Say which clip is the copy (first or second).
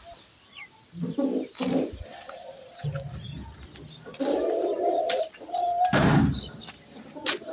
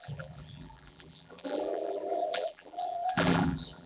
second